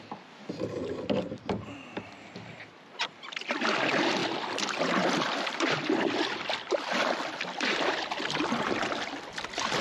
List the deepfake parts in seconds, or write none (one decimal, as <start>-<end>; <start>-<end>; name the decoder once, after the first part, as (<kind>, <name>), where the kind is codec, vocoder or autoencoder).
4.2-9.2 (vocoder, BigVGAN v2)